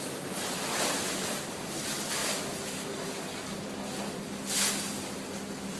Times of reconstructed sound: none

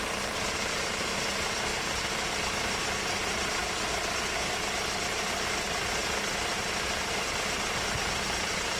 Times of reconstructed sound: 6.0-8.8 (vocoder, BigVGAN v2)

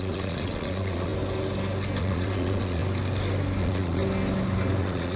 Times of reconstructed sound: 0.0-1.1 (vocoder, Vocos); 2.0-2.8; 3.6-4.0; 4.8-5.2